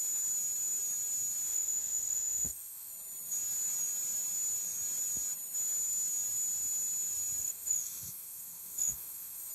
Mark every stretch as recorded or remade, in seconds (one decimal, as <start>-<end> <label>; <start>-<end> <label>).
0.0-1.5 recorded; 1.5-2.9 remade; 2.9-7.4 recorded; 7.4-9.5 remade